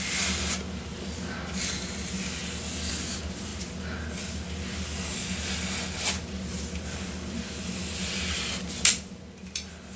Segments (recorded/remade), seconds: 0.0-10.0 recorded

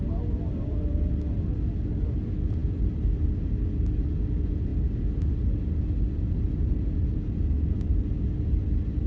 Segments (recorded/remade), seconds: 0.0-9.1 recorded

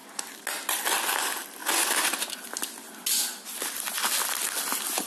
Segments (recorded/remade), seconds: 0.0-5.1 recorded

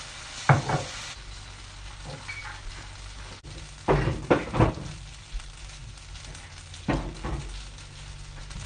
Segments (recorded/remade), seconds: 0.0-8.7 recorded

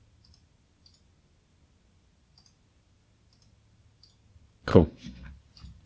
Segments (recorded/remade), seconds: 0.0-4.7 recorded; 4.7-5.3 remade; 5.3-5.9 recorded

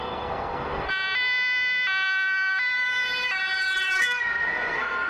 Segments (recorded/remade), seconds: 0.0-0.9 remade; 0.9-4.0 recorded; 4.0-5.1 remade

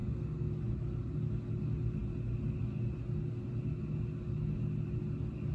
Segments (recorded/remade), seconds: 0.0-0.5 remade; 0.5-5.5 recorded

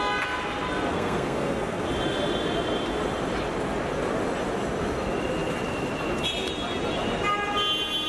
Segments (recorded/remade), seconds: 0.0-0.9 recorded; 0.9-1.8 remade; 1.8-8.1 recorded